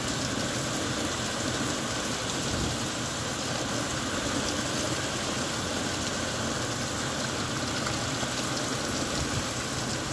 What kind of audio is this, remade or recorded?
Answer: recorded